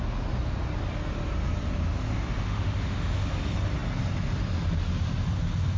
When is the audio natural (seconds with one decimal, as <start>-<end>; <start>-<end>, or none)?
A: 0.0-2.4; 3.3-5.8